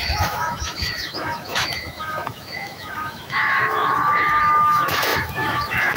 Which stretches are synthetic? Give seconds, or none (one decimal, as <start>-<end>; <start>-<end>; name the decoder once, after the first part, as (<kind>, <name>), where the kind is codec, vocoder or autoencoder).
0.0-6.0 (autoencoder, DAC-VAE)